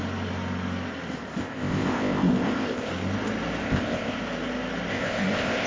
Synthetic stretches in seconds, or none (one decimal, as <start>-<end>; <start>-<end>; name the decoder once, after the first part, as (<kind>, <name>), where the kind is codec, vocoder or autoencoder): 1.4-2.9 (codec, ZipCodec); 3.6-4.2; 4.9-5.7